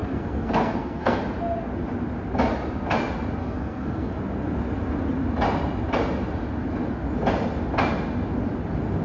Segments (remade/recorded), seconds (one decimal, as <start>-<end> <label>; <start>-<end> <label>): 0.0-1.2 remade; 1.2-3.4 recorded; 3.4-4.1 remade; 4.1-9.0 recorded